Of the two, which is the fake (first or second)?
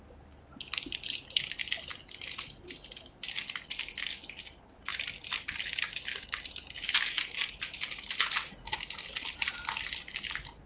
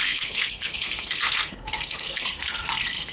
second